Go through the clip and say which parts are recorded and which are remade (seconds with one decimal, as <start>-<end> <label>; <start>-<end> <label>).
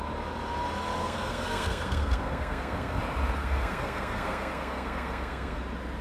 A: 0.0-1.0 recorded; 1.0-3.0 remade; 3.0-3.4 recorded; 3.4-5.6 remade; 5.6-6.0 recorded